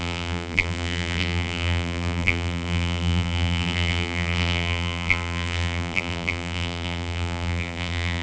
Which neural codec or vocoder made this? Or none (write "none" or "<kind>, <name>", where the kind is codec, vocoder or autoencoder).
vocoder, BigVGAN v2